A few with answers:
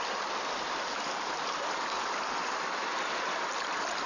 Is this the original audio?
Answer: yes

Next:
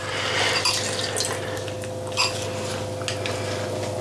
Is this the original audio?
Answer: yes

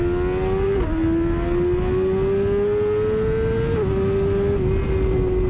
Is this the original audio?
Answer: yes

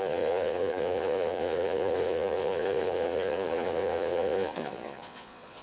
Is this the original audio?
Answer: no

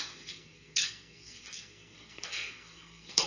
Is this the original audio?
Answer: no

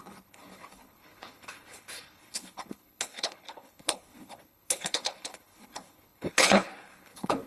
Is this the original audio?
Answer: no